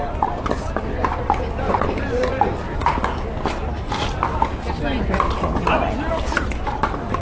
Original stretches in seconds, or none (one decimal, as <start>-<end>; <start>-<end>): 2.8-6.1